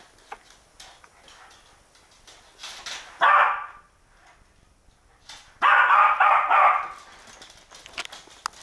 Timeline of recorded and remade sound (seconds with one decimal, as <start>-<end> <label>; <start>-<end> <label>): 0.0-8.6 recorded